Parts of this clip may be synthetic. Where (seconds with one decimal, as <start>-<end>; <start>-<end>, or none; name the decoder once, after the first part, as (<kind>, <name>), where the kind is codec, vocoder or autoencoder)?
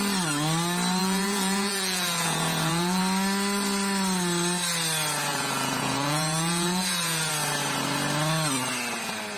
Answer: 1.0-3.0 (vocoder, Vocos); 5.3-7.3